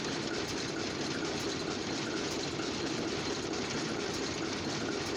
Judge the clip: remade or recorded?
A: remade